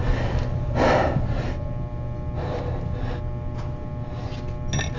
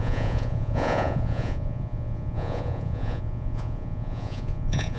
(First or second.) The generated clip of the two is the second